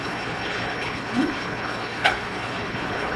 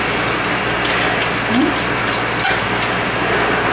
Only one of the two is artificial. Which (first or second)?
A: first